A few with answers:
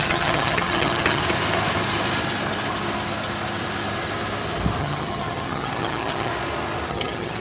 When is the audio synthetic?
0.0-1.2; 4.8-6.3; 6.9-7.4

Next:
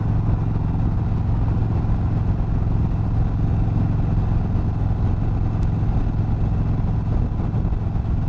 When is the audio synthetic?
none

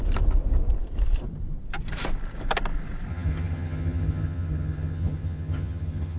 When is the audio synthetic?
3.1-6.2

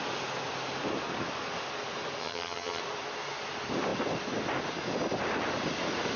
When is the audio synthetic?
2.2-2.8

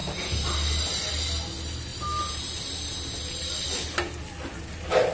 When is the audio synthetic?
none

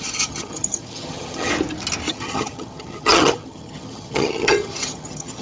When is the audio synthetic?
0.0-1.5; 2.1-5.4

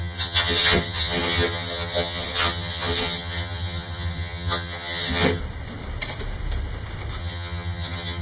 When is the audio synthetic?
0.0-5.4; 7.2-8.2

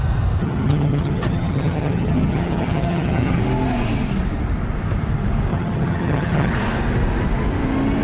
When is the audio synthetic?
0.4-3.4; 5.5-6.5